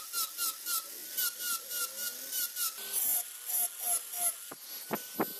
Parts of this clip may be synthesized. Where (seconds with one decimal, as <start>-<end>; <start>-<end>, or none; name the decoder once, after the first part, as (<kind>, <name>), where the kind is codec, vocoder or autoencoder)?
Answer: none